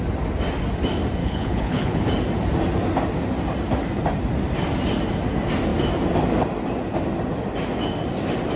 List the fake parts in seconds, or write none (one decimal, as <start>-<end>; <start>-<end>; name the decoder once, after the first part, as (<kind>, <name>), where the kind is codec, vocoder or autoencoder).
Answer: 1.2-2.0 (codec, HILCodec)